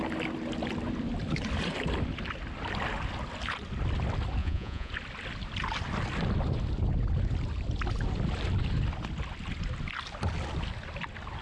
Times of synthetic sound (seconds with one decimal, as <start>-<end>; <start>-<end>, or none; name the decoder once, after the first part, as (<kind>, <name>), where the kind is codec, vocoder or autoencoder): 4.4-4.9 (vocoder, Vocos)